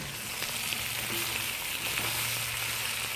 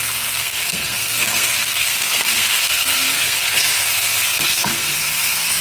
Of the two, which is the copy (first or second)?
second